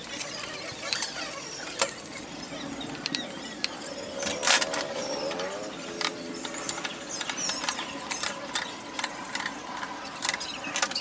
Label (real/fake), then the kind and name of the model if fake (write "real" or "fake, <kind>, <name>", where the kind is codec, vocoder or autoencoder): real